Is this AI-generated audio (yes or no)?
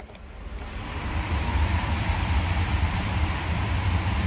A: yes